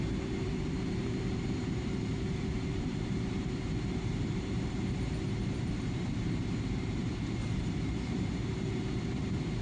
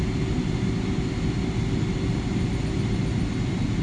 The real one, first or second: second